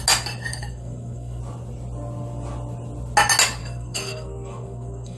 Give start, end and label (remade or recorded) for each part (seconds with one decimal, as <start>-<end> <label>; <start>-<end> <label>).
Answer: 0.0-0.5 recorded; 0.5-1.4 remade; 1.4-3.6 recorded; 3.6-5.2 remade